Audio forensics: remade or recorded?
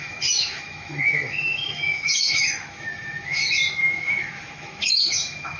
remade